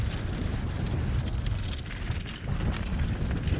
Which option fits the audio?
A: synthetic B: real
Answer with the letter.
B